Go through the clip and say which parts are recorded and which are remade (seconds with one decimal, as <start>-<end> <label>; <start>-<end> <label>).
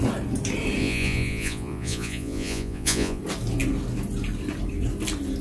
0.0-0.8 recorded; 0.8-3.2 remade; 3.2-5.4 recorded